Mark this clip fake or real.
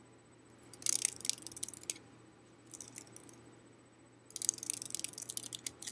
real